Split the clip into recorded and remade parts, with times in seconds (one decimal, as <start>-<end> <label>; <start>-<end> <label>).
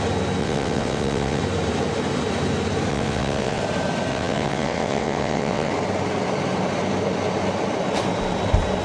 0.0-0.4 recorded; 0.4-1.4 remade; 1.4-2.9 recorded; 2.9-3.6 remade; 3.6-4.1 recorded; 4.1-5.7 remade; 5.7-8.8 recorded